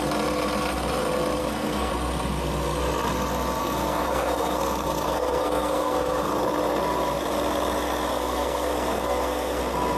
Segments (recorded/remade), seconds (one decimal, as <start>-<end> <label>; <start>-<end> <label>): 0.0-1.4 recorded; 1.4-1.9 remade; 1.9-3.6 recorded; 3.6-6.3 remade; 6.3-8.1 recorded; 8.1-9.6 remade; 9.6-10.0 recorded